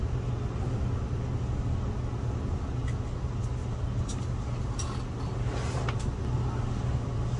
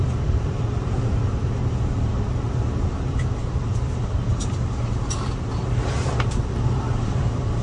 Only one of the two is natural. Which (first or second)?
first